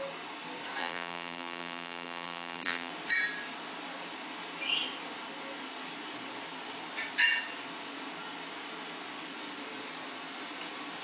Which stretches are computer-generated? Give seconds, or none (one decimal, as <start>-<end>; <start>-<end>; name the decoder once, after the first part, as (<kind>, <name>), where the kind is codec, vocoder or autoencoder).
0.8-2.9 (vocoder, BigVGAN v2)